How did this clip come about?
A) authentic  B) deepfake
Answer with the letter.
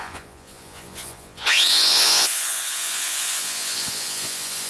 B